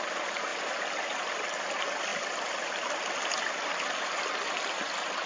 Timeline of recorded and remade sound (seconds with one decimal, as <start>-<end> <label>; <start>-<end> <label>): 0.0-5.3 recorded